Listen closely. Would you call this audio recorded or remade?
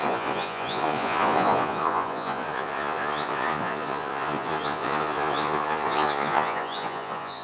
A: remade